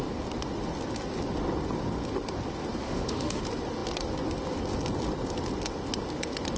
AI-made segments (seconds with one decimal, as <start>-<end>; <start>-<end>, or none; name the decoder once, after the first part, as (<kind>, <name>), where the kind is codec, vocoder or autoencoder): 2.8-3.4 (autoencoder, DAC-VAE)